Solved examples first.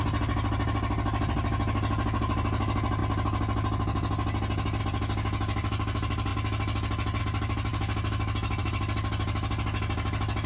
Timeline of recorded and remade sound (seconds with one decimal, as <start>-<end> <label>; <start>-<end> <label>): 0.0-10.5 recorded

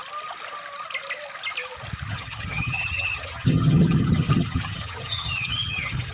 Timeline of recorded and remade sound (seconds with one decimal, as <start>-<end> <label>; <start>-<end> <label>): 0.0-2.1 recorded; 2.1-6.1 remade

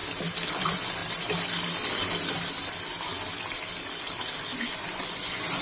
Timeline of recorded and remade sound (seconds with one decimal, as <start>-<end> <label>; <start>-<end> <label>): 0.0-0.5 recorded; 0.5-1.0 remade; 1.0-4.4 recorded; 4.4-5.6 remade

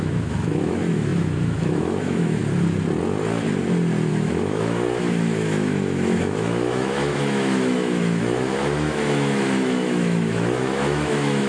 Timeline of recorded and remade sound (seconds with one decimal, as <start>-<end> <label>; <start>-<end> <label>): 0.0-2.4 remade; 2.4-4.1 recorded; 4.1-11.5 remade